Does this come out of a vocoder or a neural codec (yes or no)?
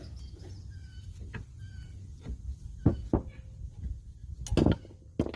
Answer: no